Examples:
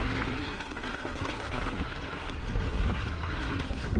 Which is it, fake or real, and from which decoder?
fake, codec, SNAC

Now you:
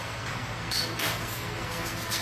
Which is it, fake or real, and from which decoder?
fake, codec, SNAC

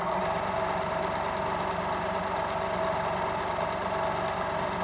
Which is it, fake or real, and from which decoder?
real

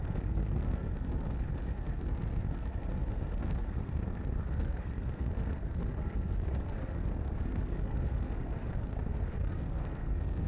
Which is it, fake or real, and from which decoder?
fake, codec, SNAC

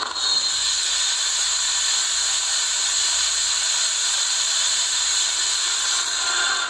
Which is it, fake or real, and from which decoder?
real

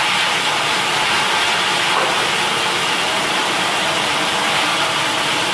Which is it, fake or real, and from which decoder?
real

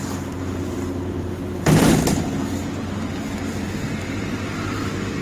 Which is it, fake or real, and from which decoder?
real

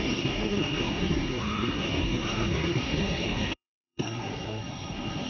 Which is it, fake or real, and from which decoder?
fake, codec, SNAC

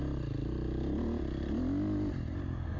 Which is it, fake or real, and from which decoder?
real